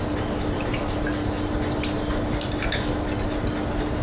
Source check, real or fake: real